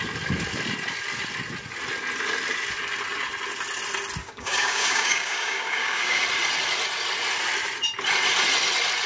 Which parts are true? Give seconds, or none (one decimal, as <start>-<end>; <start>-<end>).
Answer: 0.0-4.2; 6.2-9.1